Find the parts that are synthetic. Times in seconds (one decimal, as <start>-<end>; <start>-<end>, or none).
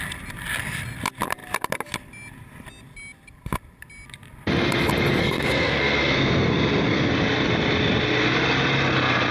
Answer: 5.2-7.1